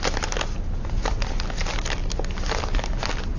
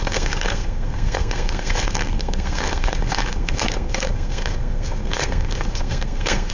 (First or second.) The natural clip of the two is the first